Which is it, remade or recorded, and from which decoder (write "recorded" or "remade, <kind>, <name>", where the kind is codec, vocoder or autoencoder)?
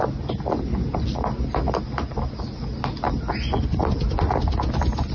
recorded